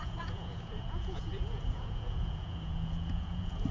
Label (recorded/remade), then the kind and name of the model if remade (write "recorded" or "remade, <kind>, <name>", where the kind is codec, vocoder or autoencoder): remade, vocoder, Vocos